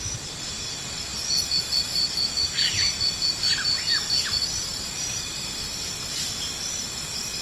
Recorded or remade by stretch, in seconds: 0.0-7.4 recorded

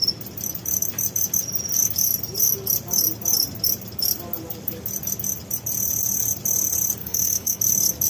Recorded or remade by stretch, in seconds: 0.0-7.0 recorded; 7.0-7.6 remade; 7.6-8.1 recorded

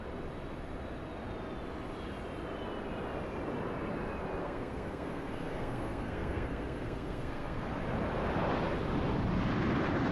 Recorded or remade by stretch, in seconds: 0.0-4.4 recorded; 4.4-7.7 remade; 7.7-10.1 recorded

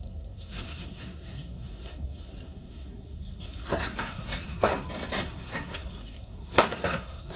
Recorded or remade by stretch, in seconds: 0.0-4.7 remade; 4.7-5.2 recorded; 5.2-7.4 remade